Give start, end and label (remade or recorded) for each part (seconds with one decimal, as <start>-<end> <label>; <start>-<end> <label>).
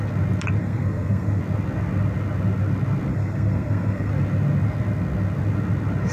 0.0-0.6 recorded; 0.6-1.4 remade; 1.4-3.1 recorded; 3.1-4.1 remade; 4.1-6.1 recorded